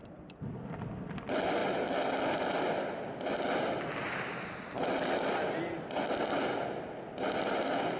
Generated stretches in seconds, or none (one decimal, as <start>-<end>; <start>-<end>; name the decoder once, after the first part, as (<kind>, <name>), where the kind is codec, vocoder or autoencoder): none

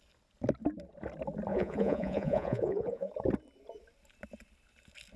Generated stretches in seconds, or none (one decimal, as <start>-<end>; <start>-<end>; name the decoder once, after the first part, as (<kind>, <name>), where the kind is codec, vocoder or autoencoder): 1.5-3.1 (vocoder, Vocos)

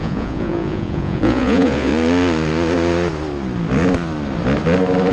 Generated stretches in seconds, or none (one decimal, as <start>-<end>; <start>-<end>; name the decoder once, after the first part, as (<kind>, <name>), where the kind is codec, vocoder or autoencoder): 0.0-1.9 (vocoder, Vocos)

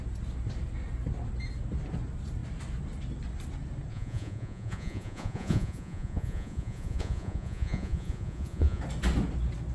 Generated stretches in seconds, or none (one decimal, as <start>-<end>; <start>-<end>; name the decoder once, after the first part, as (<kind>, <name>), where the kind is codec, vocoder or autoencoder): 3.9-8.8 (vocoder, Vocos)

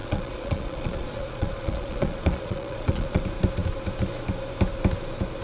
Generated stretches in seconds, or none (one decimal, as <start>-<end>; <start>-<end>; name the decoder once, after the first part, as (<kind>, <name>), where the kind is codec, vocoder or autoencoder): 0.0-3.2 (vocoder, Vocos)